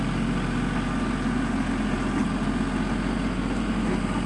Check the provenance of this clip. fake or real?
real